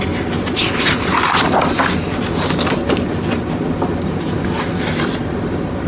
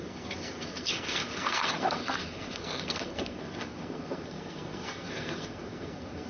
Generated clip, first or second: second